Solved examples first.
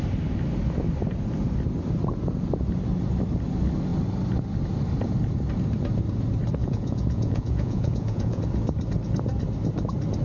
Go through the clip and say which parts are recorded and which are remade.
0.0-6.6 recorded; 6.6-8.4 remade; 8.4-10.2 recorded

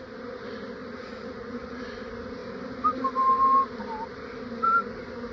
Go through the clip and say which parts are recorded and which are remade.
0.0-0.8 recorded; 0.8-1.8 remade; 1.8-5.3 recorded

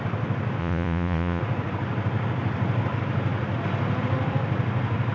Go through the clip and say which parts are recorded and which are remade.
0.0-0.6 recorded; 0.6-1.4 remade; 1.4-5.1 recorded

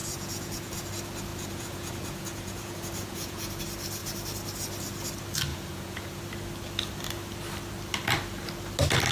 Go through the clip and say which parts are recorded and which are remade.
0.0-0.9 remade; 0.9-1.3 recorded; 1.3-3.6 remade; 3.6-5.5 recorded; 5.5-6.2 remade; 6.2-9.1 recorded

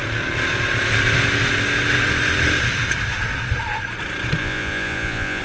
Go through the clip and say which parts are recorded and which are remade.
0.0-4.4 recorded; 4.4-5.4 remade

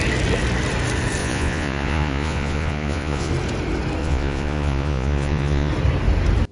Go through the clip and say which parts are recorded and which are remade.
0.0-1.2 recorded; 1.2-3.3 remade; 3.3-4.0 recorded; 4.0-5.7 remade; 5.7-6.5 recorded

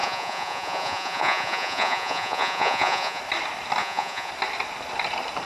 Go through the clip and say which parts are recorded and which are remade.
0.0-3.2 remade; 3.2-3.8 recorded; 3.8-4.3 remade; 4.3-5.4 recorded